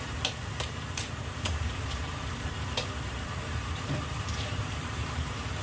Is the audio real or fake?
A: fake